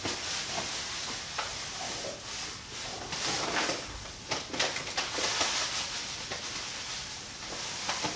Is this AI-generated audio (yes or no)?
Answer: no